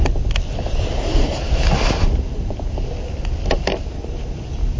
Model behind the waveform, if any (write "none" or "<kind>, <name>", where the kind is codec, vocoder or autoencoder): none